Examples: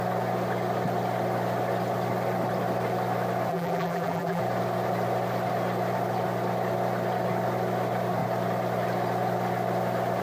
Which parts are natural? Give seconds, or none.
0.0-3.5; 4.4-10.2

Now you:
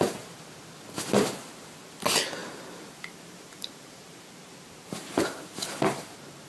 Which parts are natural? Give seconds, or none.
0.0-2.4

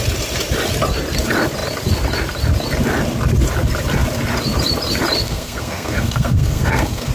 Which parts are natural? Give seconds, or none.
0.0-5.2